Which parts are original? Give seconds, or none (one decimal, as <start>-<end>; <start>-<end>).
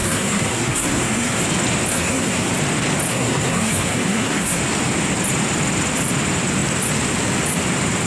1.4-1.9; 2.5-3.1; 4.6-8.1